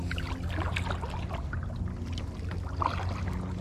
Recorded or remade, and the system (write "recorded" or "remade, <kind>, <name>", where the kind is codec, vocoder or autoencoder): recorded